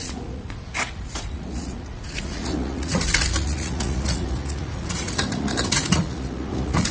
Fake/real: fake